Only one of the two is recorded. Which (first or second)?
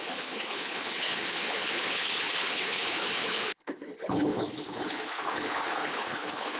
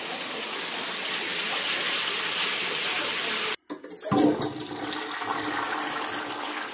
second